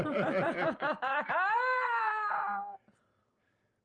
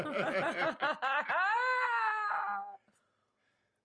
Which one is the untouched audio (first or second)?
second